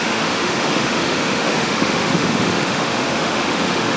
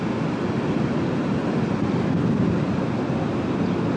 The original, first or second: second